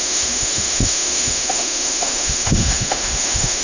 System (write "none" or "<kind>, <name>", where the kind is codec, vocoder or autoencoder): autoencoder, DAC-VAE